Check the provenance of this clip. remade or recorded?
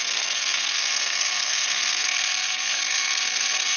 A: remade